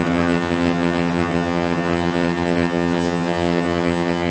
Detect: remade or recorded remade